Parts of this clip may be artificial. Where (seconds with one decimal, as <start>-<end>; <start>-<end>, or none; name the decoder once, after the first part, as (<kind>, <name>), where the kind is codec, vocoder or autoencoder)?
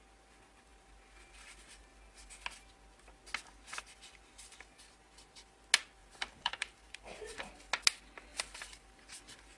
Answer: 6.0-7.7 (vocoder, BigVGAN v2); 8.3-9.2